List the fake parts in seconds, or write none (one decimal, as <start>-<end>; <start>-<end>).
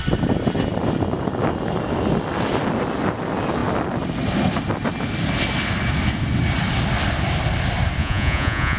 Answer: 8.0-8.8